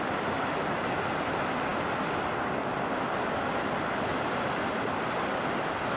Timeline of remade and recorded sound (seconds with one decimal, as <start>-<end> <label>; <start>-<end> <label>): 0.0-6.0 recorded